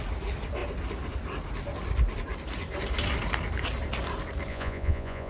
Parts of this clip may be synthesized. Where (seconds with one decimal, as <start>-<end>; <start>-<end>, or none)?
4.5-5.3